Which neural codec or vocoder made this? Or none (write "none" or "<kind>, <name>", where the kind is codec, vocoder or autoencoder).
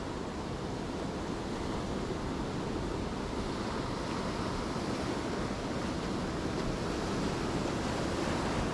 none